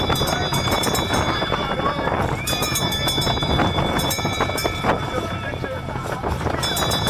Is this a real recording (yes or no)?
no